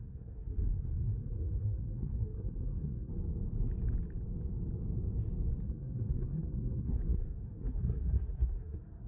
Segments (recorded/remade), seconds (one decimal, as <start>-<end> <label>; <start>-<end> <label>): 0.0-3.1 remade; 3.1-5.6 recorded; 5.6-9.1 remade